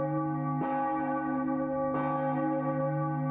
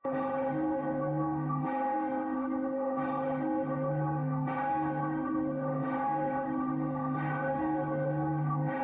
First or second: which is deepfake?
second